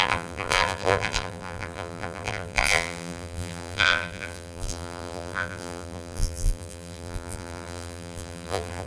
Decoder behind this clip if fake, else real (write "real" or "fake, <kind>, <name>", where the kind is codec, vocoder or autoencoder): fake, vocoder, BigVGAN v2